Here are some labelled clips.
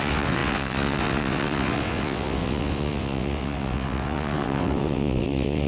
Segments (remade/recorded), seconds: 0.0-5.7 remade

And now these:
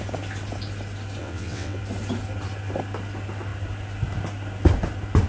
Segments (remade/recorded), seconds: 0.0-1.2 recorded; 1.2-1.8 remade; 1.8-5.3 recorded

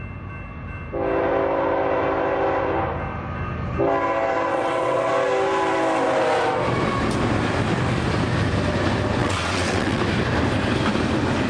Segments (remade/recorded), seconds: 0.0-4.5 recorded; 4.5-5.1 remade; 5.1-9.2 recorded; 9.2-10.0 remade; 10.0-11.5 recorded

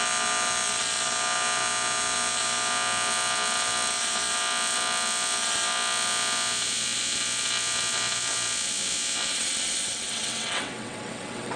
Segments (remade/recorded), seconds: 0.0-9.3 recorded; 9.3-11.6 remade

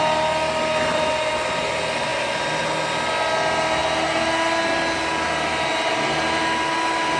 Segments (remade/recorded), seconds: 0.0-7.2 recorded

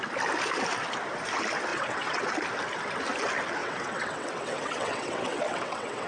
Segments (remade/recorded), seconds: 0.0-1.7 recorded; 1.7-2.2 remade; 2.2-3.6 recorded; 3.6-6.1 remade

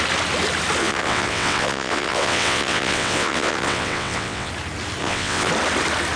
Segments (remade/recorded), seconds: 0.0-0.8 recorded; 0.8-4.5 remade; 4.5-5.0 recorded; 5.0-5.5 remade; 5.5-6.2 recorded